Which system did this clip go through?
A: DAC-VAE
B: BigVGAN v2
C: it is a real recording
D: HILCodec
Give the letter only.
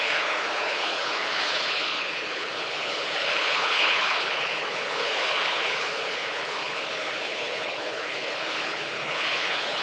D